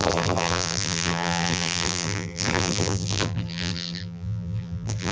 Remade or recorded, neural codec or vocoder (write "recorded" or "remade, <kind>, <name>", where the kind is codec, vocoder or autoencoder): remade, vocoder, BigVGAN v2